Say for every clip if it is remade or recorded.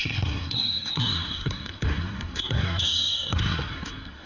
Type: remade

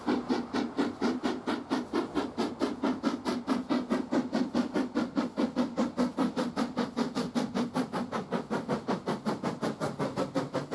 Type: recorded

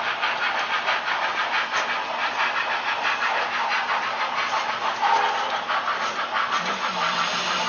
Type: recorded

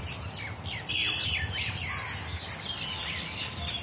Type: recorded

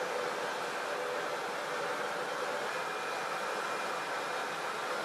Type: recorded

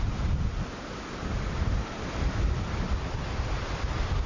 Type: recorded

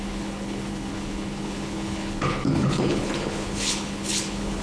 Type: remade